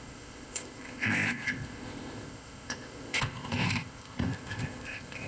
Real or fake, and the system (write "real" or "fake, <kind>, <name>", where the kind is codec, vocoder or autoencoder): fake, codec, ZipCodec